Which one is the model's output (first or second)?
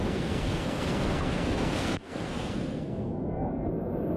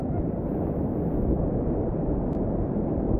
first